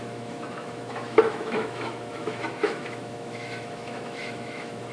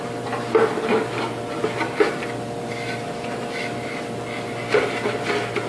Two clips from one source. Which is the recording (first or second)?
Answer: second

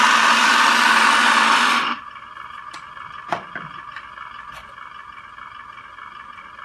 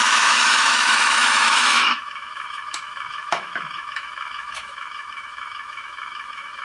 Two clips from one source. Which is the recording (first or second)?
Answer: first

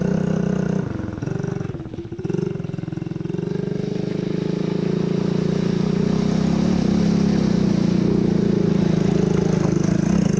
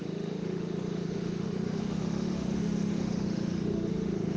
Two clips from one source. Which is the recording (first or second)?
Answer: first